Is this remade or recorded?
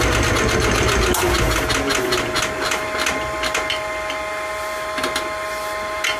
recorded